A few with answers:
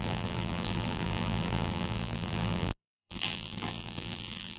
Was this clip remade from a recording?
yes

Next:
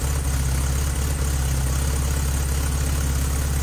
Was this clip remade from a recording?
no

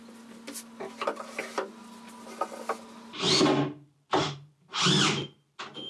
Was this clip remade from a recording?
no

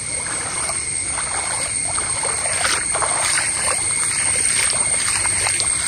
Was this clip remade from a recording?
yes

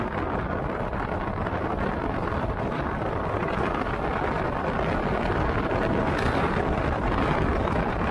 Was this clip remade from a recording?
yes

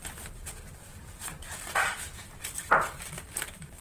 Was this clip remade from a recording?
yes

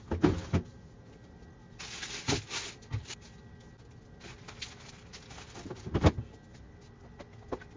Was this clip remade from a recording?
no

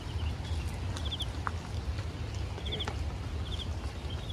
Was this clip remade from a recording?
no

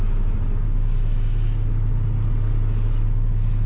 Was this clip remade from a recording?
no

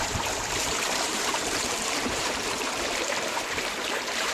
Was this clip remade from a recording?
yes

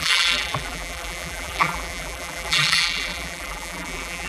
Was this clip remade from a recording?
yes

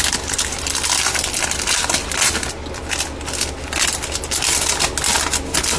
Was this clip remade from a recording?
no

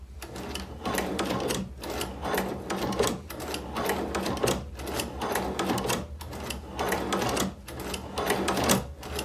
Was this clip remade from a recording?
no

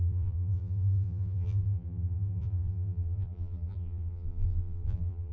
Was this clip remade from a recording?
yes